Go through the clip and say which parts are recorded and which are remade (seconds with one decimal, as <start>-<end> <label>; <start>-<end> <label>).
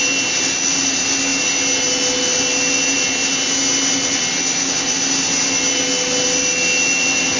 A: 0.0-7.4 recorded